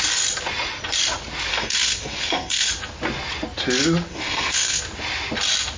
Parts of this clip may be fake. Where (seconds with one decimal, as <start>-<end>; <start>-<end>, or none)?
1.5-2.7; 4.1-4.8